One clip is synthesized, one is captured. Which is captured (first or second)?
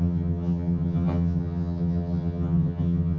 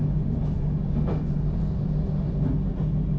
second